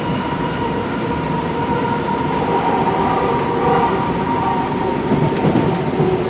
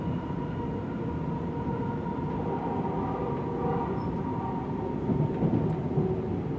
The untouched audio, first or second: second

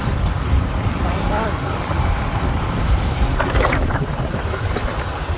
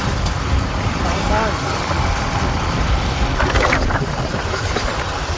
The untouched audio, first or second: second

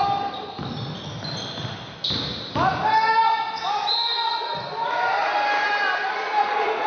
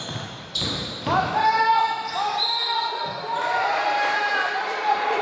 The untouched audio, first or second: first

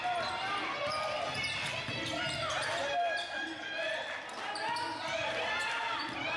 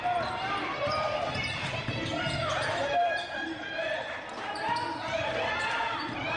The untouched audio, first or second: first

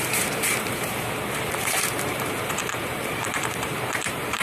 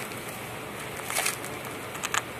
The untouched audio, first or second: second